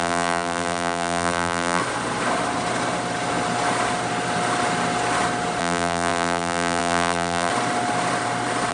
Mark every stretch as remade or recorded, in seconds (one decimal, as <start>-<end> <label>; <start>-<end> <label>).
0.0-1.8 remade; 1.8-5.6 recorded; 5.6-7.5 remade; 7.5-8.7 recorded